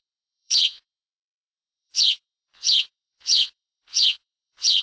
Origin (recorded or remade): remade